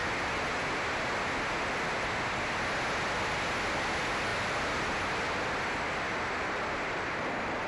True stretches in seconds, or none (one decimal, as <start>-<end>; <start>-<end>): 0.0-7.7

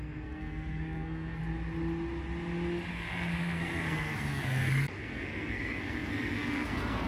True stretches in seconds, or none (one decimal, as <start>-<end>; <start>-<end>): 1.4-2.9

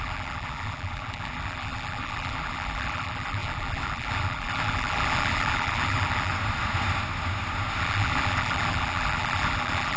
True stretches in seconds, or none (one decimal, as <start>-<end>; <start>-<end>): 6.3-7.8

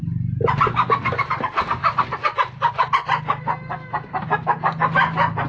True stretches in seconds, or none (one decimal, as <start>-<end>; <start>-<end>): 0.0-3.9; 4.4-5.5

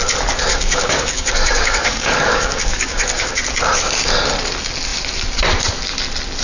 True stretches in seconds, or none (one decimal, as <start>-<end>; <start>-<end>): 0.0-0.5; 3.3-6.4

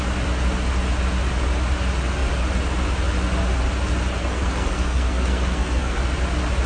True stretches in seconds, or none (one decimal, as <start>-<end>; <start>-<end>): 0.0-4.2; 6.0-6.7